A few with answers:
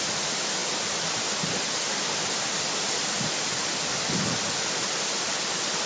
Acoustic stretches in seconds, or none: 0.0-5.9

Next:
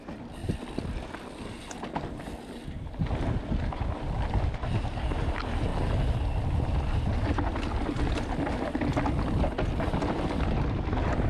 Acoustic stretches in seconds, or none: 0.0-11.3

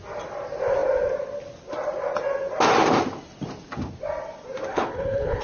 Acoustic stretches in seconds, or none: 0.0-4.7

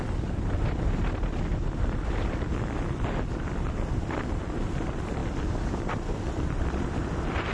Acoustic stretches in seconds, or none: 0.0-7.5

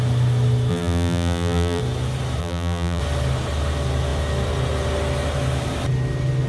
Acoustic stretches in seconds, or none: 0.0-0.7; 1.8-2.4; 3.0-6.5